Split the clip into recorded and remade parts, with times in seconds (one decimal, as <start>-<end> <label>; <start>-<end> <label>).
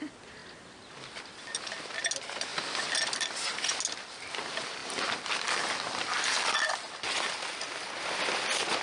0.0-4.8 recorded; 4.8-6.9 remade; 6.9-8.8 recorded